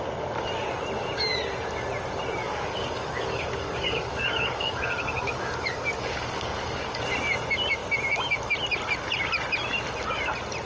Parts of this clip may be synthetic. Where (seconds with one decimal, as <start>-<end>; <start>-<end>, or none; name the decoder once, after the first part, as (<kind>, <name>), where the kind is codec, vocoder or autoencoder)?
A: 2.4-7.0 (codec, DAC)